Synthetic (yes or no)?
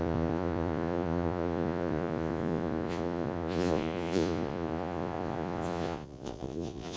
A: yes